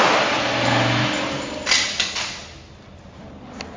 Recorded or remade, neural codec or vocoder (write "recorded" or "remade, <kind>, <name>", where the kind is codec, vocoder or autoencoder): recorded